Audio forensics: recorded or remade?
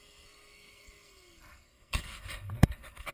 remade